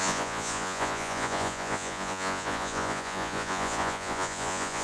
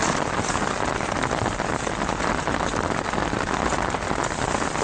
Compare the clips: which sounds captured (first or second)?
second